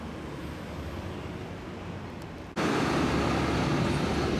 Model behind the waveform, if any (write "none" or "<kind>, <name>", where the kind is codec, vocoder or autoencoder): none